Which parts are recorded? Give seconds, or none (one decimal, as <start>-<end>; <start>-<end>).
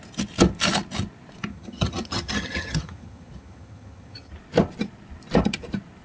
0.0-1.5; 4.3-6.0